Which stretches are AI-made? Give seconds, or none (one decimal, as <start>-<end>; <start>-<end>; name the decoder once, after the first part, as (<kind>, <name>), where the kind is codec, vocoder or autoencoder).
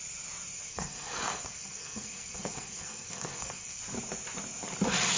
0.7-3.8 (codec, SNAC)